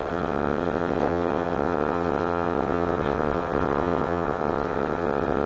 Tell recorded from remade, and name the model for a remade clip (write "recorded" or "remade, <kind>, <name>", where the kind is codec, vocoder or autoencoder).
remade, vocoder, WaveNeXt